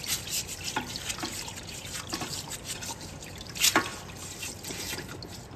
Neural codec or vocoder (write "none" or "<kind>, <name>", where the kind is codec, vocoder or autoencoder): none